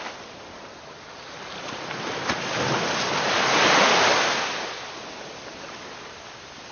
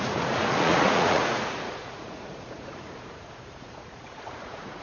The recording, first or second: first